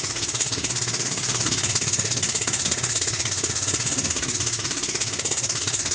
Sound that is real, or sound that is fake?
fake